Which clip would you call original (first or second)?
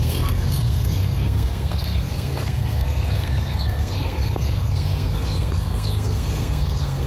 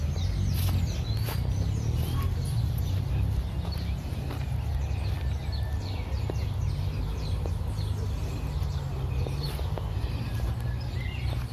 second